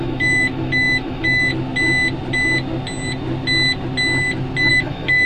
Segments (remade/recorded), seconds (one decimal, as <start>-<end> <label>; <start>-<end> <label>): 0.0-1.5 remade; 1.5-4.7 recorded; 4.7-5.3 remade